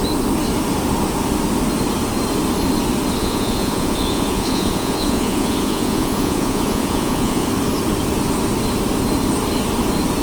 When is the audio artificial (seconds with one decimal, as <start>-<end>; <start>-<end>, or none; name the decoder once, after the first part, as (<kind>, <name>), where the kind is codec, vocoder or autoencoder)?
3.2-7.5 (vocoder, Vocos)